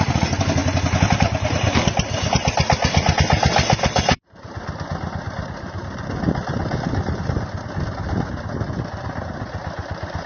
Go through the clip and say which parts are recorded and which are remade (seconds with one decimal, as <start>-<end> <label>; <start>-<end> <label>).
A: 0.0-10.3 recorded